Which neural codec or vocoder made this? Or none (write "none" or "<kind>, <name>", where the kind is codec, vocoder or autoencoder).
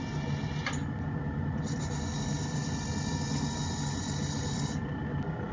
none